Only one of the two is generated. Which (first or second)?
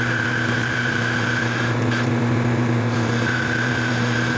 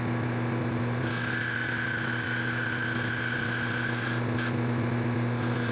first